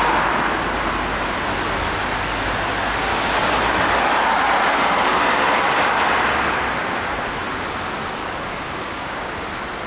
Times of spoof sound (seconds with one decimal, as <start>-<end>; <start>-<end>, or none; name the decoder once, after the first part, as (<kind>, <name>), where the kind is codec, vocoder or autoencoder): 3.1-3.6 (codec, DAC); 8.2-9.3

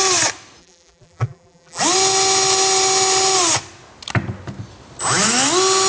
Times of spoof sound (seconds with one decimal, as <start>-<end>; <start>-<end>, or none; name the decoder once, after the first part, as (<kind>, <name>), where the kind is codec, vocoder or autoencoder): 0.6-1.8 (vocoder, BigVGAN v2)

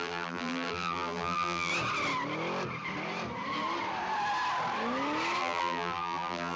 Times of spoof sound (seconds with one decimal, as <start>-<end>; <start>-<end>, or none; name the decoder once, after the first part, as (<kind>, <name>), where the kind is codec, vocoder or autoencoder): 0.0-1.7 (vocoder, BigVGAN v2); 5.4-6.6